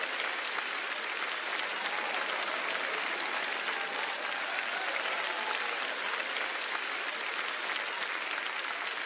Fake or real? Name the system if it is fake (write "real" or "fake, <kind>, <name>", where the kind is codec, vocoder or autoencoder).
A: real